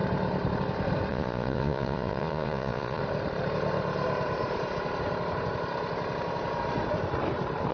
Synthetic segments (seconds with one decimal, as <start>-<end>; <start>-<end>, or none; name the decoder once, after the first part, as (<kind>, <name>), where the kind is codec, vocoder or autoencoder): 1.1-3.0 (vocoder, Vocos)